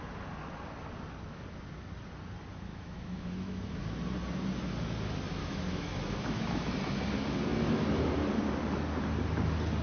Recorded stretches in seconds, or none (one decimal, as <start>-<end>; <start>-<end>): 0.0-2.7; 3.8-5.4; 6.7-9.8